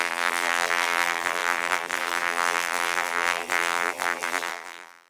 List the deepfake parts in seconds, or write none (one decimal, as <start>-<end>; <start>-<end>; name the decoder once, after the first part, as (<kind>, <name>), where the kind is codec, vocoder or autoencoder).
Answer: 0.0-5.1 (vocoder, BigVGAN v2)

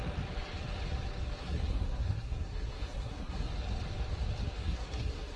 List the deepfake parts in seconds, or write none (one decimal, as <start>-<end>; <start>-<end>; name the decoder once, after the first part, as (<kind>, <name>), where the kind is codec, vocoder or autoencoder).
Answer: 1.4-3.5 (codec, SNAC); 4.6-5.4

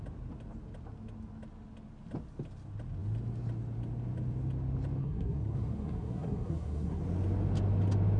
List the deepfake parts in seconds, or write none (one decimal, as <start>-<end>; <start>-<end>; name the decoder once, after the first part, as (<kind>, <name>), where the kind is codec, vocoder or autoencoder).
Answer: 5.0-7.0 (codec, SNAC)

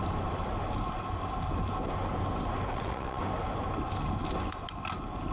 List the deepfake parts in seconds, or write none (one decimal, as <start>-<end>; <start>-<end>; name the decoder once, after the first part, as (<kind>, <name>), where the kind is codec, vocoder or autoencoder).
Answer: 2.7-3.2 (vocoder, WaveNeXt)